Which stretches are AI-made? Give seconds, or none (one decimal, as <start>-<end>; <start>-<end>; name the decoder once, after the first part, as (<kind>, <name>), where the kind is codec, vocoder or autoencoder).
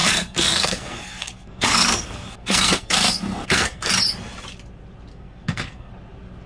0.0-3.9 (codec, SNAC); 5.1-5.9